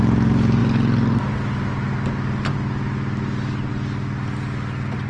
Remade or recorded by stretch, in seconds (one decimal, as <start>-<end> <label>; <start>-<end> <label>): 0.0-5.1 recorded